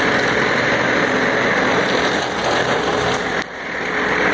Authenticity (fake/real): real